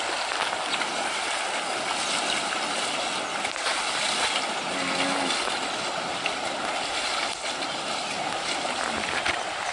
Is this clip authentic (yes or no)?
yes